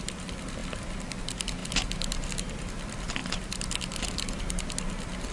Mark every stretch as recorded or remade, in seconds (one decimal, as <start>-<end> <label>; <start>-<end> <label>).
0.0-5.3 recorded